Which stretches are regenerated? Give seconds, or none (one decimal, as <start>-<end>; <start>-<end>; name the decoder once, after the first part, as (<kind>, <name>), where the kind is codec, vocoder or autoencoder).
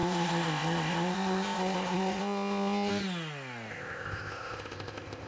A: 0.0-2.9 (codec, ZipCodec); 3.7-5.3